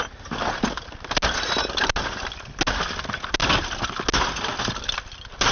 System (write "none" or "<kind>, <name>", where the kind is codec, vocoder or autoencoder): none